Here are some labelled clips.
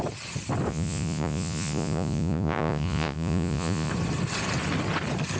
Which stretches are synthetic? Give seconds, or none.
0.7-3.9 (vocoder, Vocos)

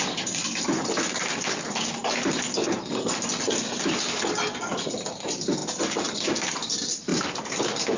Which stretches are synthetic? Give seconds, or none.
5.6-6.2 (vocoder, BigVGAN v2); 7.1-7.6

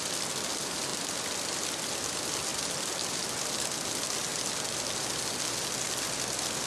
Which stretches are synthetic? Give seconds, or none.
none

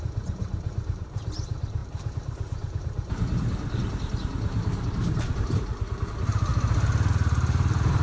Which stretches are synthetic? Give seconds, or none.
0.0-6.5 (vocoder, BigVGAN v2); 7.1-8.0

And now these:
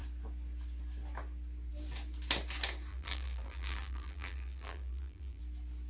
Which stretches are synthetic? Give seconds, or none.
2.9-5.4 (vocoder, BigVGAN v2)

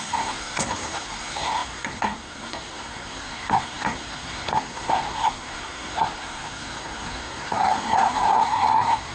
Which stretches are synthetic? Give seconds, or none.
0.0-9.1 (codec, SNAC)

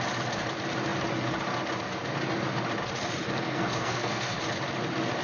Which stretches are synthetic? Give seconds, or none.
3.2-4.4 (codec, SNAC)

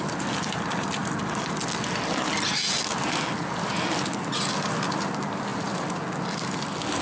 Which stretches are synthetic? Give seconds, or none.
none